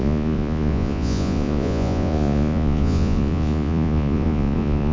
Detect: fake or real fake